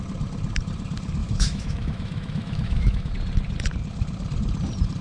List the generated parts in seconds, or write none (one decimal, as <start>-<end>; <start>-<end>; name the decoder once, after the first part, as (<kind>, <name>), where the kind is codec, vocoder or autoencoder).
1.2-3.1 (autoencoder, DAC-VAE)